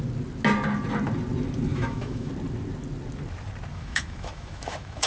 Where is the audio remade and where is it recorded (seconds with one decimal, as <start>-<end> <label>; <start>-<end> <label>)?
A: 0.0-1.7 recorded; 1.7-2.3 remade; 2.3-3.7 recorded; 3.7-5.1 remade